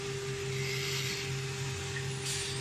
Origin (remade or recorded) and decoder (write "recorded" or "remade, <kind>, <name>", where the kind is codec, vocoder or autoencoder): recorded